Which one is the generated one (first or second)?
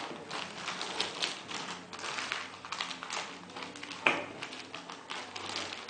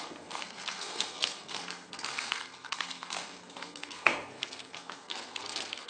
second